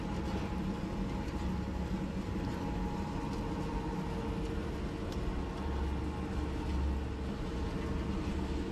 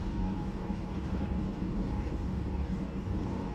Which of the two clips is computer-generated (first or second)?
second